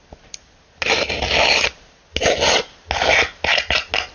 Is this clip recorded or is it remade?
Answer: recorded